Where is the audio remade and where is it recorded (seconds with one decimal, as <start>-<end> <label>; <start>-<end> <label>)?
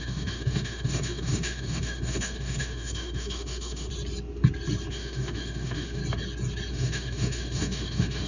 0.0-3.9 remade; 3.9-4.9 recorded; 4.9-6.0 remade; 6.0-6.7 recorded; 6.7-8.3 remade